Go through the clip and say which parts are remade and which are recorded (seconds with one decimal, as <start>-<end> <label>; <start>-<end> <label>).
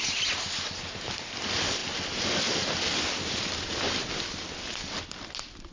0.0-5.7 recorded